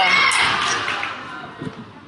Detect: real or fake real